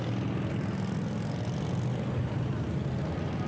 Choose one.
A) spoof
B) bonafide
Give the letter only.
B